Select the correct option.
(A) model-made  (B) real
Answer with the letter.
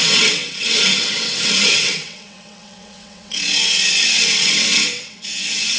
A